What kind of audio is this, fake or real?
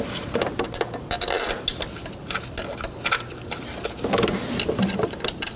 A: real